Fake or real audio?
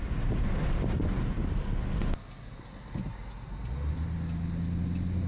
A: real